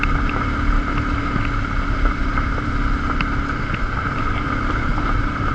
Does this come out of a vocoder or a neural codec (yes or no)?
no